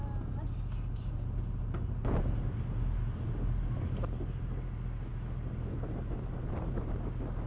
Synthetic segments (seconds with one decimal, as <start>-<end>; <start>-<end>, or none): none